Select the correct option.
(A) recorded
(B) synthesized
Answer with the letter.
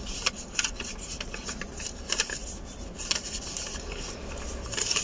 A